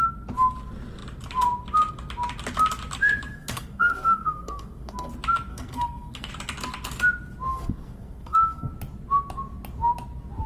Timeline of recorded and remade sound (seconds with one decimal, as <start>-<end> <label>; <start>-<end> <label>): 0.0-3.4 recorded; 3.4-5.1 remade; 5.1-5.5 recorded; 5.5-6.3 remade; 6.3-7.5 recorded; 7.5-8.7 remade; 8.7-10.5 recorded